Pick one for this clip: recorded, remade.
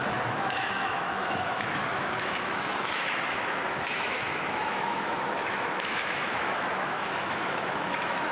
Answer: remade